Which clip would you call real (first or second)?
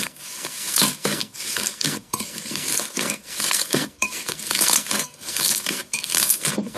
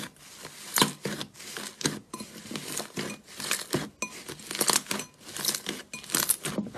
second